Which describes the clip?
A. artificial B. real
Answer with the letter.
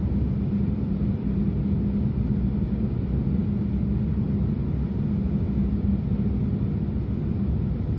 B